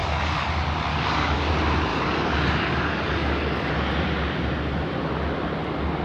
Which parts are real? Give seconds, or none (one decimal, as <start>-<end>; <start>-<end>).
0.5-0.9; 1.5-1.9; 3.7-6.0